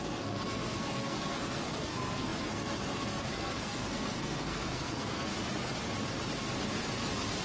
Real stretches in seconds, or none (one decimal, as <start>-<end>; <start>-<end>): 5.3-7.4